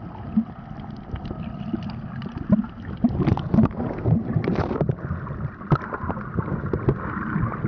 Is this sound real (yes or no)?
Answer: yes